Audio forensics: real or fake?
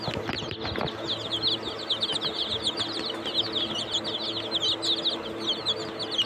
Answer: real